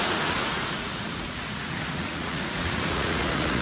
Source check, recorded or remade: remade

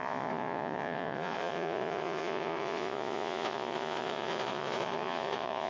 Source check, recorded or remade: remade